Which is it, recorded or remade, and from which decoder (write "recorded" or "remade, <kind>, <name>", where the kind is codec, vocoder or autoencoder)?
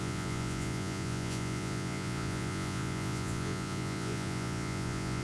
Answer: remade, vocoder, Vocos